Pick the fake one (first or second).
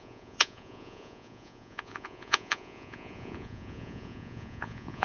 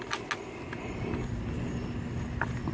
first